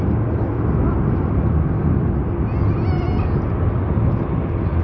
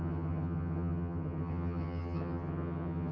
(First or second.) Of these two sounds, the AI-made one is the second